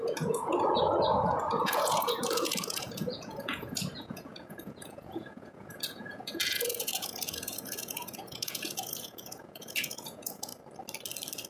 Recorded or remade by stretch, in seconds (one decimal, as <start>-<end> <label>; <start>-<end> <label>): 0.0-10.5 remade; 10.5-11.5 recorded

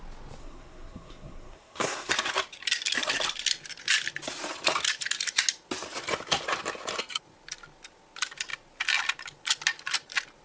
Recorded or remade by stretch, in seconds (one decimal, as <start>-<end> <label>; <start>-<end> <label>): 0.0-0.4 recorded; 0.4-2.1 remade; 2.1-10.4 recorded

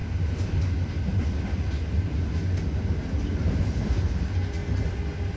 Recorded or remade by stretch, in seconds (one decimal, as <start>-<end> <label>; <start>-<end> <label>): 0.0-5.4 recorded

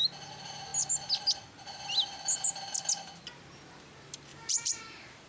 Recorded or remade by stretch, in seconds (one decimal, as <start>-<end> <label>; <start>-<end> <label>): 0.0-4.3 recorded; 4.3-5.3 remade